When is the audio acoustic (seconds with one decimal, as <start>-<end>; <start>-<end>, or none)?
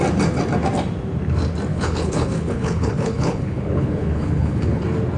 0.0-1.7; 4.8-5.2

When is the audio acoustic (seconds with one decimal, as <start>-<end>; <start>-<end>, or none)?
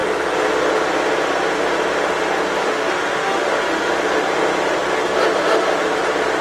0.0-2.6; 3.9-6.4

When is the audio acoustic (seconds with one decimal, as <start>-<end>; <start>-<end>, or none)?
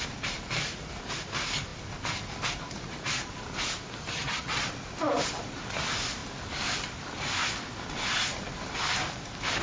0.0-4.0; 4.5-9.6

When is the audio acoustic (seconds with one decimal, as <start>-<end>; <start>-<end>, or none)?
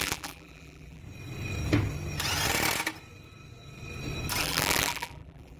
1.0-4.4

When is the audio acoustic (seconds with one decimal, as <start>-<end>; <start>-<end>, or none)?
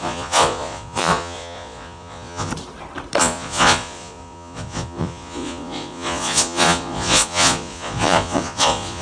2.5-3.2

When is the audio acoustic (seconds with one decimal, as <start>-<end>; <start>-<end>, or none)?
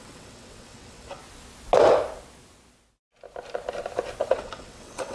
1.2-4.3